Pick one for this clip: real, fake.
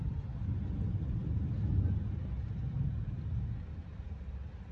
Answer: real